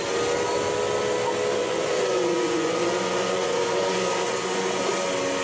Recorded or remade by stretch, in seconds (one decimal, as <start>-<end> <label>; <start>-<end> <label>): 0.0-1.6 recorded; 1.6-4.8 remade; 4.8-5.4 recorded